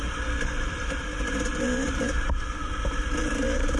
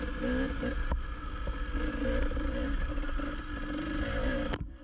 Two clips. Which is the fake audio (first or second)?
first